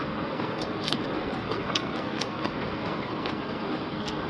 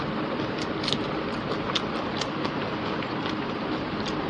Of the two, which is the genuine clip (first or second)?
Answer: second